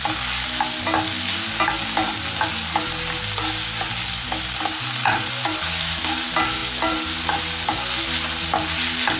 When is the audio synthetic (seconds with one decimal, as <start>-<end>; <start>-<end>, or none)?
none